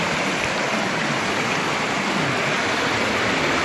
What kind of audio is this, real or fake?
real